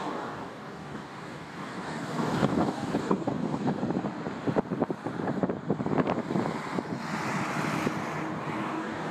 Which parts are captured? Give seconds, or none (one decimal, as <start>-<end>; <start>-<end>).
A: 3.8-8.6